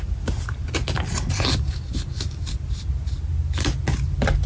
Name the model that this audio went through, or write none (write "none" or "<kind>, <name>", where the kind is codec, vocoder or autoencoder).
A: none